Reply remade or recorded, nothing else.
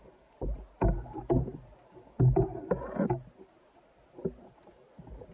recorded